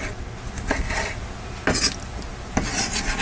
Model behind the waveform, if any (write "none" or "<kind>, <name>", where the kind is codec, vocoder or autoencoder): none